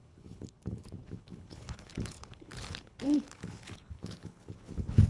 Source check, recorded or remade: remade